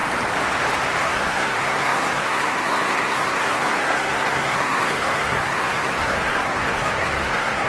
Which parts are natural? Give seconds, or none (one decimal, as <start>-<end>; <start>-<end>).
0.0-1.0